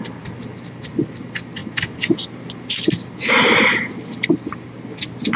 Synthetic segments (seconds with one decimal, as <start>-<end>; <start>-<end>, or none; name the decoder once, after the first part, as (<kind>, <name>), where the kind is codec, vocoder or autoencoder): none